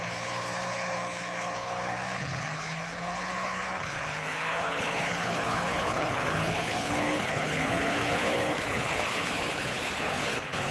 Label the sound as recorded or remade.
remade